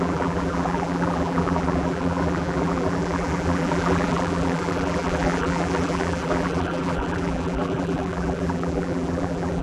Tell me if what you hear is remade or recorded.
remade